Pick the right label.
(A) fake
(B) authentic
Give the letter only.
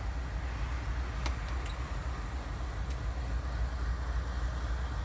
B